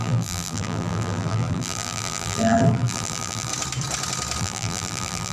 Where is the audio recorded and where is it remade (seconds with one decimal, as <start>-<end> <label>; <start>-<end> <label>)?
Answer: 0.0-3.5 remade; 3.5-4.4 recorded; 4.4-5.3 remade